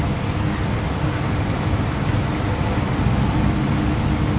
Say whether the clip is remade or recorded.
recorded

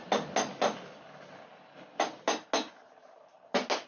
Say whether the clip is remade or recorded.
recorded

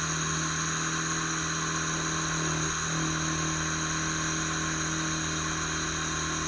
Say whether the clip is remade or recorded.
recorded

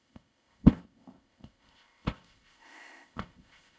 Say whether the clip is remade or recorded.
remade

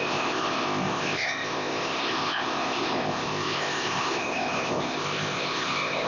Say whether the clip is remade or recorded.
remade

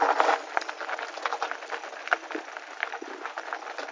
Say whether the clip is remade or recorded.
recorded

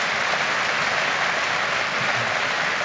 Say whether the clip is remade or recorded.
recorded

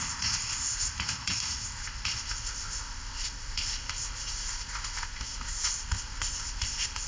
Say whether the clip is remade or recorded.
remade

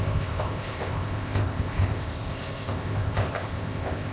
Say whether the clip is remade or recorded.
remade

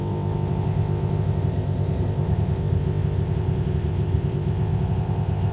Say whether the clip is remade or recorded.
remade